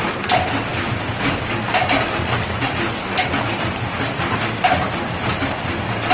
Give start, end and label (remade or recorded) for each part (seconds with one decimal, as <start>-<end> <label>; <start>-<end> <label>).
0.0-6.1 recorded